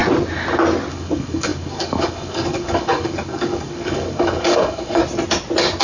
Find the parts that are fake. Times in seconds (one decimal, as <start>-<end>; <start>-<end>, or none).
0.9-5.0